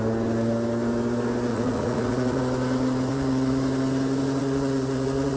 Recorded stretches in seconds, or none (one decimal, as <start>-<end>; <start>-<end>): 0.0-1.5; 2.4-3.1; 3.6-4.4